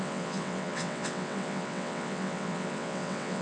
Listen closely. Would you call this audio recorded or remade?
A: remade